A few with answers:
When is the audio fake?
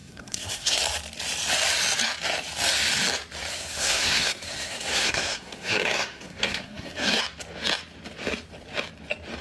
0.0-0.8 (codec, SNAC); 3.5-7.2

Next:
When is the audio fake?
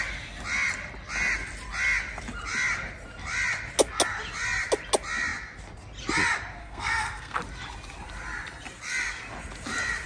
6.6-7.4 (codec, SNAC)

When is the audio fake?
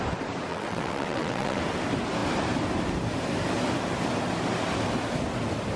0.5-1.6 (vocoder, WaveNeXt)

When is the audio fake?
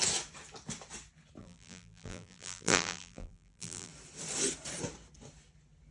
1.4-3.9 (vocoder, BigVGAN v2)